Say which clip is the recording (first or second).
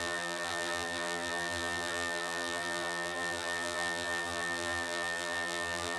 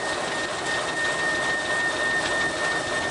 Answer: second